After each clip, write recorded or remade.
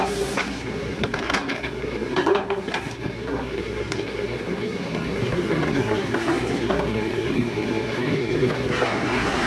remade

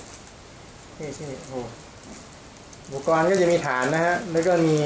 recorded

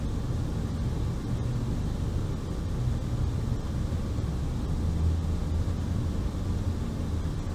recorded